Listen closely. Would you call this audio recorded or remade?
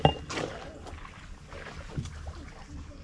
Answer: recorded